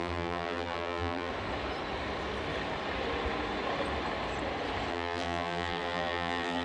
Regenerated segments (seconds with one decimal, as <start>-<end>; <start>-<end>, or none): 0.0-1.3; 4.9-6.6